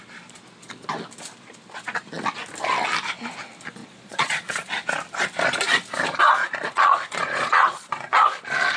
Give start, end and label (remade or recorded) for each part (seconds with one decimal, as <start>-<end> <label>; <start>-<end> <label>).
0.0-3.8 recorded; 3.8-4.7 remade; 4.7-6.4 recorded; 6.4-8.2 remade; 8.2-8.8 recorded

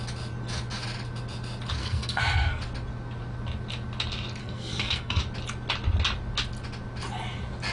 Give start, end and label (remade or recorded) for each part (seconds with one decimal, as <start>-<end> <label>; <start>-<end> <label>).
0.0-1.8 recorded; 1.8-2.6 remade; 2.6-4.4 recorded; 4.4-5.2 remade; 5.2-7.7 recorded

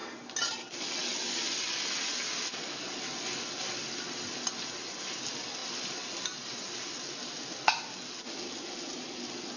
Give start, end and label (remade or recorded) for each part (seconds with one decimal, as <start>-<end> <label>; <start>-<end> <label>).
0.0-9.6 recorded

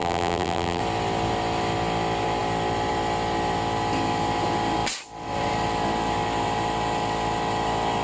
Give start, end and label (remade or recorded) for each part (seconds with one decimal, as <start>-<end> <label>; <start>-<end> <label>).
0.0-0.8 remade; 0.8-8.0 recorded

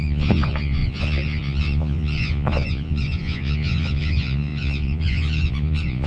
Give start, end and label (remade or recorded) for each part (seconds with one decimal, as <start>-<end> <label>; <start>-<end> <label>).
0.0-6.1 remade

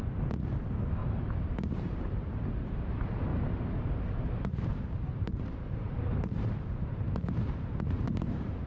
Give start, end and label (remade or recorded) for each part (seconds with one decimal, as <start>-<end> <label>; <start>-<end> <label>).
0.0-1.0 recorded; 1.0-2.3 remade; 2.3-3.3 recorded; 3.3-8.7 remade

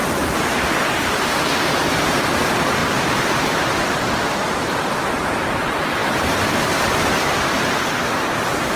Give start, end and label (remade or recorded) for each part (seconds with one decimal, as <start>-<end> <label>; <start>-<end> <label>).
0.0-2.3 recorded; 2.3-8.8 remade

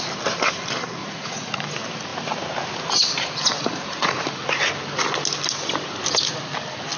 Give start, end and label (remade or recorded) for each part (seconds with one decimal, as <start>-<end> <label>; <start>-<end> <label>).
0.0-1.0 recorded; 1.0-1.6 remade; 1.6-3.5 recorded; 3.5-4.4 remade; 4.4-7.0 recorded